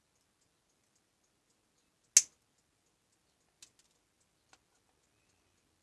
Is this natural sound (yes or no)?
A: yes